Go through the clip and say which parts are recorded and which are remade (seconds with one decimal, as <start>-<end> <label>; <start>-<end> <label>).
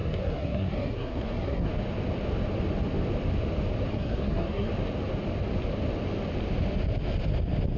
0.0-1.7 remade; 1.7-3.9 recorded; 3.9-4.7 remade; 4.7-7.8 recorded